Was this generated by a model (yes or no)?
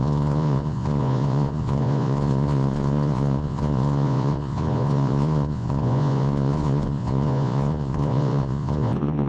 yes